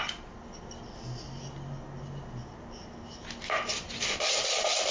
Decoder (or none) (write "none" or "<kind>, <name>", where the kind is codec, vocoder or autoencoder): none